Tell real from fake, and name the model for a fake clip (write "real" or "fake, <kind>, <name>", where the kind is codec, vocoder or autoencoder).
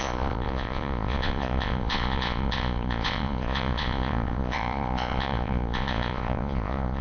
fake, vocoder, Vocos